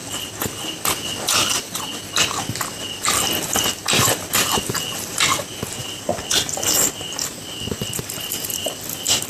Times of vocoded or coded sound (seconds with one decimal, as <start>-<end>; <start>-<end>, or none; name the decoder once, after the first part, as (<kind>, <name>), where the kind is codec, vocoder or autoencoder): 0.0-1.8 (vocoder, BigVGAN v2); 5.8-8.8